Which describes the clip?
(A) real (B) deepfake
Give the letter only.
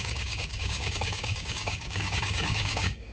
B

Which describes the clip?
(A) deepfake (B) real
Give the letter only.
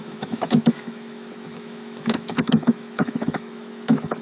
A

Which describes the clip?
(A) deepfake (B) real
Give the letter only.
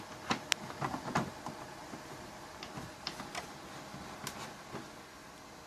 B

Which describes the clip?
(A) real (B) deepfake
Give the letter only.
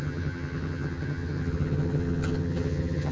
B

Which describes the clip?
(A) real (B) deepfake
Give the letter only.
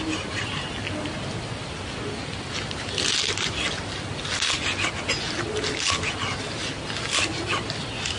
A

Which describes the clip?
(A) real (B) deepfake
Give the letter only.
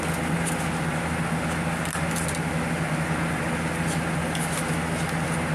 A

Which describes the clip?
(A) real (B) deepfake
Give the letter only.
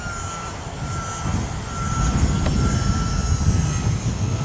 A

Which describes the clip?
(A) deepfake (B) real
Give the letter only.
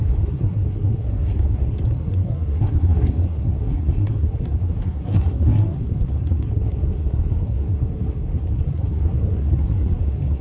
A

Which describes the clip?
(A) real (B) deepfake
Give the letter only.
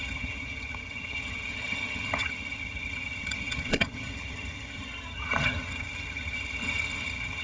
B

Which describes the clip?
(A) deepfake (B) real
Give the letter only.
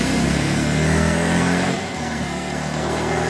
A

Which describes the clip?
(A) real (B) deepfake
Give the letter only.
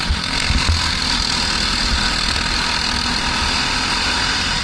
A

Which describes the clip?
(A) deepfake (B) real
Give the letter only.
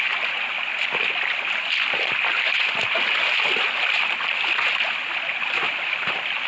B